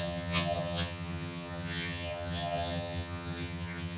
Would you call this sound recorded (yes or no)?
no